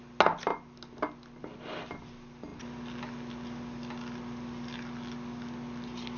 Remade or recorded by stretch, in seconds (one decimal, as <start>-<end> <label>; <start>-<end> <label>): 0.0-6.2 recorded